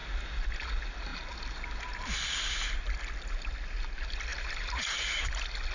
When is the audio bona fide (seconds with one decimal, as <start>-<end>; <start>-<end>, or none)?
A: 0.0-4.3; 5.3-5.7